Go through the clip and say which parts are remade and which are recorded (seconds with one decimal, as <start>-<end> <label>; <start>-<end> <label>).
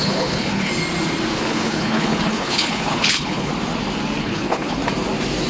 0.0-0.7 remade; 0.7-1.4 recorded; 1.4-3.5 remade; 3.5-4.2 recorded; 4.2-4.8 remade; 4.8-5.5 recorded